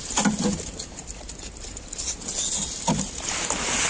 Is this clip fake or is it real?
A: real